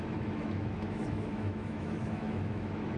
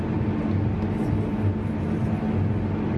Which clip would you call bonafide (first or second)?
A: second